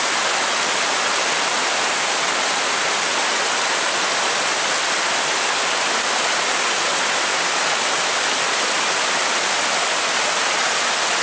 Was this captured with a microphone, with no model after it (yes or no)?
yes